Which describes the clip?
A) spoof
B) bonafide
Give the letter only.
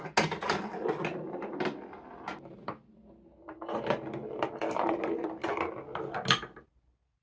B